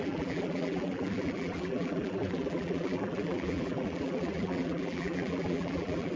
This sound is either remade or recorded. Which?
remade